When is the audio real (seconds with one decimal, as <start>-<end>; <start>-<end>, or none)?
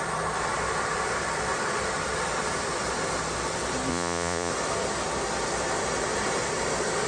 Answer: 0.0-3.9; 4.5-7.1